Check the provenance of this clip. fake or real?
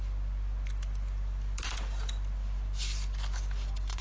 real